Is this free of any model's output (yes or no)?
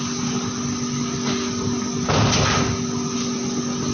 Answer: yes